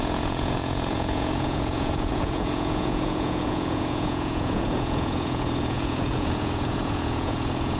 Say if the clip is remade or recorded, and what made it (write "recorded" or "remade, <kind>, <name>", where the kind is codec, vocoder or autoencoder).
remade, vocoder, Vocos